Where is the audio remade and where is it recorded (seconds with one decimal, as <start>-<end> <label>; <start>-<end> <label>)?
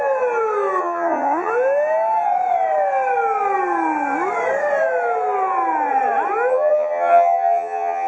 0.0-0.8 recorded; 0.8-1.5 remade; 1.5-6.5 recorded; 6.5-8.1 remade